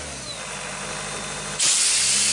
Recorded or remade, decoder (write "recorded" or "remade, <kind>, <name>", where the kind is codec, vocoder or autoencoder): recorded